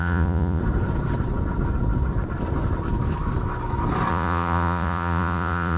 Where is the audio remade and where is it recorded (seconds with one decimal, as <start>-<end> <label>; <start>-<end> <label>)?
0.0-0.6 remade; 0.6-4.1 recorded; 4.1-5.8 remade